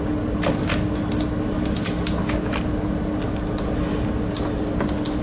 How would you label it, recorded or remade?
recorded